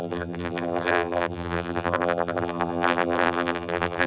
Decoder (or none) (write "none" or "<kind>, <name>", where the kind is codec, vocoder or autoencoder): vocoder, BigVGAN v2